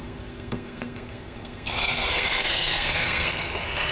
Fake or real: fake